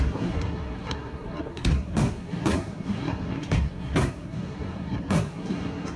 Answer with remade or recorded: remade